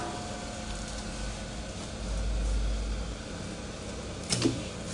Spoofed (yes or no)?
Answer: no